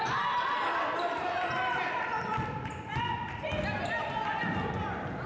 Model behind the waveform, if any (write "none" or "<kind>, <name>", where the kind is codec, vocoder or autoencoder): none